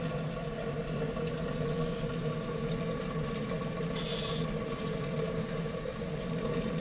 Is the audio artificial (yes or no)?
no